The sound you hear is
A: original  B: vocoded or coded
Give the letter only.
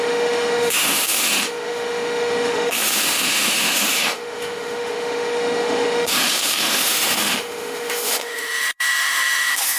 B